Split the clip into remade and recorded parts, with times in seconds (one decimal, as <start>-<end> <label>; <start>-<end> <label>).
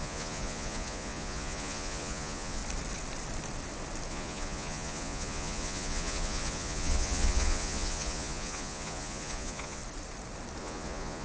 0.0-2.6 remade; 2.6-4.1 recorded; 4.1-9.8 remade; 9.8-10.6 recorded; 10.6-11.2 remade